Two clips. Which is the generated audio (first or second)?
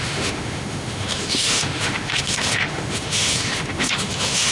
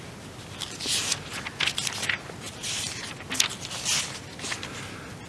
first